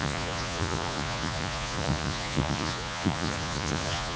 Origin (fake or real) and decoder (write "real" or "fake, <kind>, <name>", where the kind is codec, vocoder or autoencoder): fake, vocoder, Vocos